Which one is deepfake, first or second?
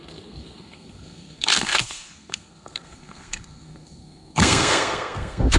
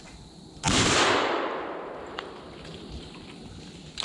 first